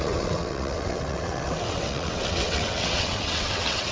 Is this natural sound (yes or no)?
no